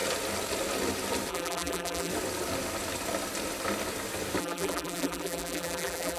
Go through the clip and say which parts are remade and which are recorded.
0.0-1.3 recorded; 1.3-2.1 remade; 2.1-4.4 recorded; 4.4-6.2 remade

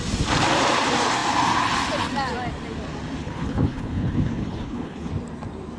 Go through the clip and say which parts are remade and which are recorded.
0.0-3.2 recorded; 3.2-5.1 remade; 5.1-5.8 recorded

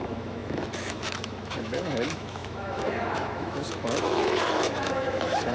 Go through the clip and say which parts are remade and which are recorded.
0.0-5.5 remade

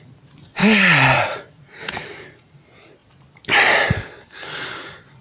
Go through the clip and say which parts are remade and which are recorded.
0.0-0.6 recorded; 0.6-2.6 remade; 2.6-5.2 recorded

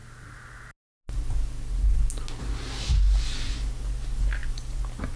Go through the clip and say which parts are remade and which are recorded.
0.0-5.2 recorded

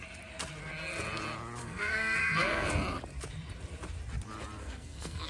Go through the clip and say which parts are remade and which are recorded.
0.0-1.6 recorded; 1.6-2.7 remade; 2.7-4.6 recorded; 4.6-5.3 remade

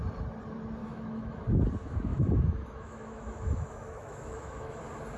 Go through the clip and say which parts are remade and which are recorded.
0.0-0.8 recorded; 0.8-1.4 remade; 1.4-2.1 recorded; 2.1-4.8 remade; 4.8-5.2 recorded

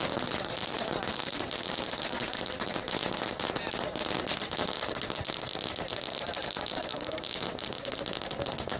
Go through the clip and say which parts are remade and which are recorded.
0.0-0.6 recorded; 0.6-4.1 remade; 4.1-6.4 recorded; 6.4-7.9 remade; 7.9-8.8 recorded